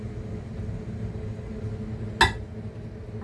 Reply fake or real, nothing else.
real